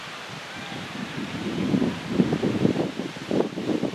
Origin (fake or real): fake